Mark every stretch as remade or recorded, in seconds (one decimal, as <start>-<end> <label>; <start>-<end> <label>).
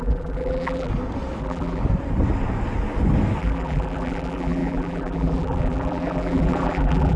0.0-0.9 remade; 0.9-1.4 recorded; 1.4-1.8 remade; 1.8-3.4 recorded; 3.4-7.2 remade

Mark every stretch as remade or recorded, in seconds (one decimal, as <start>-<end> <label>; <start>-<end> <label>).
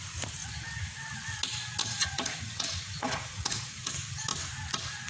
0.0-1.8 recorded; 1.8-3.9 remade; 3.9-5.1 recorded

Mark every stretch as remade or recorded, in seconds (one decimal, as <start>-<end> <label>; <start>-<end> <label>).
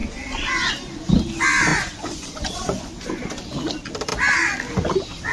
0.0-1.7 recorded; 1.7-3.3 remade; 3.3-5.3 recorded